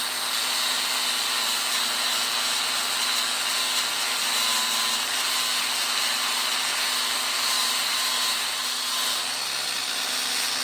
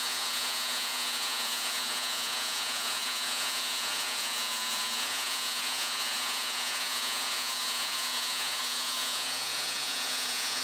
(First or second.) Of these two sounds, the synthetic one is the second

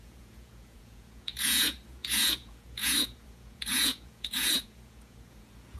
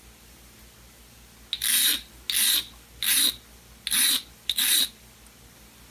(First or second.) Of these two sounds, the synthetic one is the first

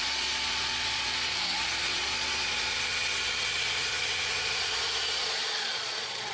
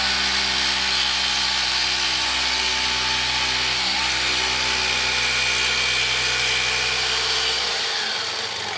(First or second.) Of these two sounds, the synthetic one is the first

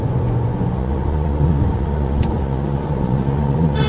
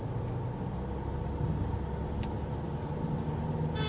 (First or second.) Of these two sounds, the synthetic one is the first